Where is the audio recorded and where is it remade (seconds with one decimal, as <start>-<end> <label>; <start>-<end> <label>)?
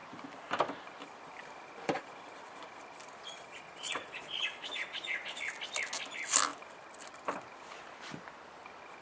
0.0-3.3 recorded; 3.3-5.4 remade; 5.4-9.0 recorded